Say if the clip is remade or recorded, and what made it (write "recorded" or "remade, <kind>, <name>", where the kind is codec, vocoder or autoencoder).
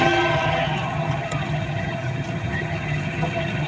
remade, vocoder, HiFi-GAN